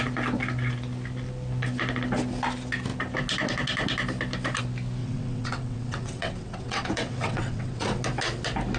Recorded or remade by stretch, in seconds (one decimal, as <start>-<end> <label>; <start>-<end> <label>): 0.0-5.0 recorded; 5.0-8.0 remade; 8.0-8.8 recorded